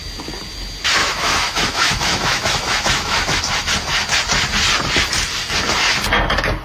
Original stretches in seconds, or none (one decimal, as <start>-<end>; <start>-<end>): 0.0-1.0; 3.4-6.6